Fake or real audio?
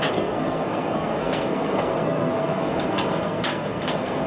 fake